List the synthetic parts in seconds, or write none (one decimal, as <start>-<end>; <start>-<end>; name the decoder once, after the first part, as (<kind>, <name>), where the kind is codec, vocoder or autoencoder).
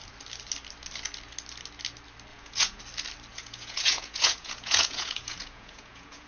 2.3-2.8 (vocoder, Vocos); 3.3-6.3